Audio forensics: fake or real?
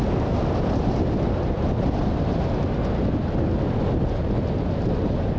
real